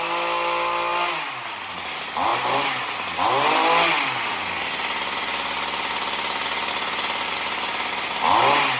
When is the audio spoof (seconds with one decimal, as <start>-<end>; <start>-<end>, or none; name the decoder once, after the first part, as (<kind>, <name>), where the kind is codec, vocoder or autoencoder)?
none